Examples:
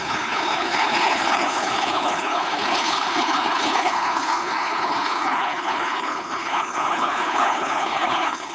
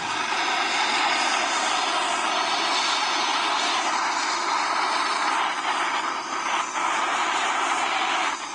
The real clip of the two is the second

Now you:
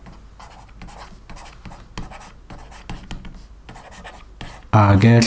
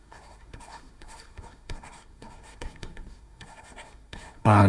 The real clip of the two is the first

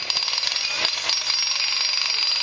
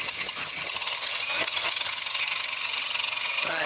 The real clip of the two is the first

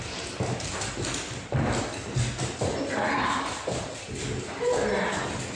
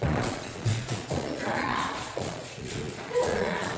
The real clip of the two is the first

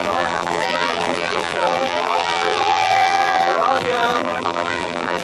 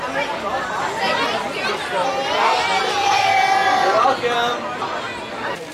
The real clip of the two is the second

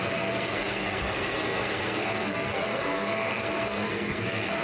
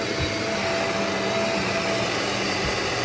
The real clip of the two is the second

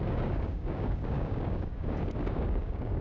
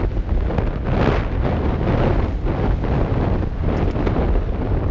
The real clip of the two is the second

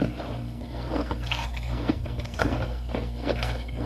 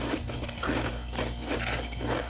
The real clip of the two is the second